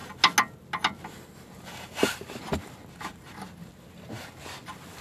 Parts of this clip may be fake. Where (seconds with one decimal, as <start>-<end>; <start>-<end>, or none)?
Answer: none